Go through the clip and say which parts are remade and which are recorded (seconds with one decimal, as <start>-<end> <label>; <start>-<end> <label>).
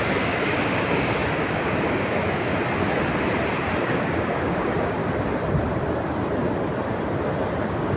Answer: 0.0-2.5 remade; 2.5-3.8 recorded; 3.8-5.0 remade; 5.0-7.6 recorded; 7.6-8.0 remade